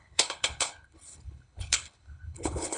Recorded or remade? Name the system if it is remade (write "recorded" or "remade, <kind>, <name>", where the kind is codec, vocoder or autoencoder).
remade, codec, HILCodec